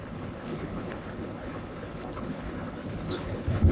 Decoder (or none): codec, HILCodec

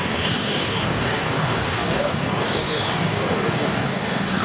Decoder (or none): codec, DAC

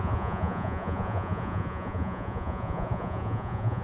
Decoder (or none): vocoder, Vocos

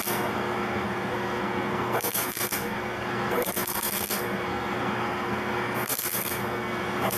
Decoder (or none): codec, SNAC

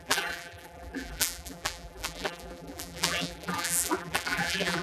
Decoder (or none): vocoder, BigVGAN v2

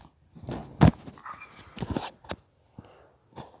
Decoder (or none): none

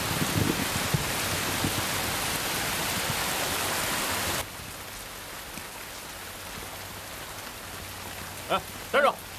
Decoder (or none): none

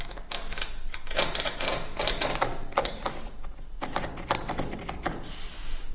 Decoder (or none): none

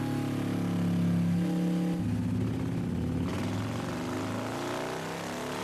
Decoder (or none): none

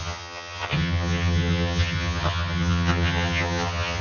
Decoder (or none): vocoder, HiFi-GAN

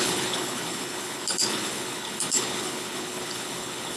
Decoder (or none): codec, HILCodec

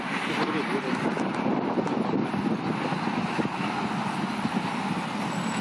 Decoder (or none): none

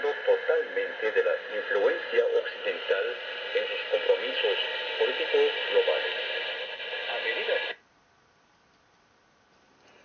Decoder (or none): none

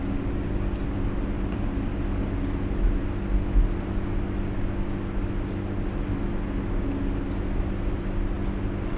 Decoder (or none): none